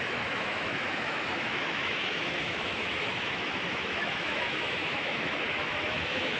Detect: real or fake fake